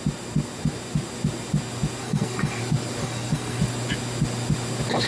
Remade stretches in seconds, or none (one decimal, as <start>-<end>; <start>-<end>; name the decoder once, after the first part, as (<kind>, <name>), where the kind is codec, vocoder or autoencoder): 2.0-2.6 (codec, SNAC); 3.0-3.6